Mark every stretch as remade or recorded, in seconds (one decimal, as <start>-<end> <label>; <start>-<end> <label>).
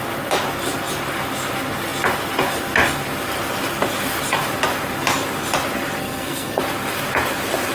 0.0-6.0 recorded; 6.0-6.6 remade; 6.6-7.7 recorded